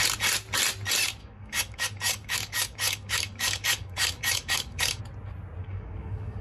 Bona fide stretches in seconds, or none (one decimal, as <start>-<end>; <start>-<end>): 0.0-1.2; 5.0-5.6